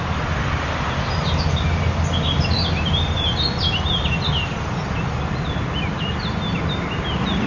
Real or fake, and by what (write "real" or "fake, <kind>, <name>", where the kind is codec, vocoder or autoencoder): real